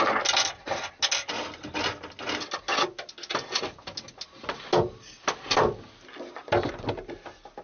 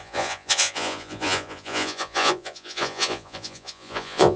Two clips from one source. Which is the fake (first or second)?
second